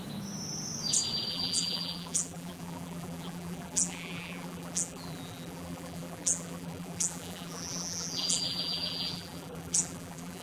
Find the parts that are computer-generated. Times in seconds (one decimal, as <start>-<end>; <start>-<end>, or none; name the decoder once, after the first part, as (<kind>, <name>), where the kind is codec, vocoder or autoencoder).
1.3-10.4 (vocoder, BigVGAN v2)